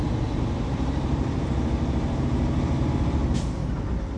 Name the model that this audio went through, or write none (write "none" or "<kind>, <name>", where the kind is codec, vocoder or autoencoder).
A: none